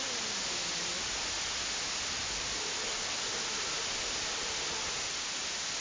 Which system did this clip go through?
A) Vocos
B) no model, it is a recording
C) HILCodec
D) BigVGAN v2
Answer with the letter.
B